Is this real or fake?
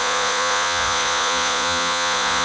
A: fake